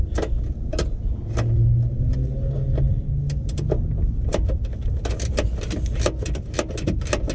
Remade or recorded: recorded